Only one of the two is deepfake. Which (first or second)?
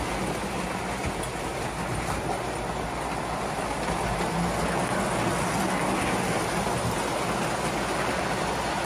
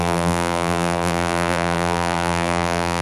second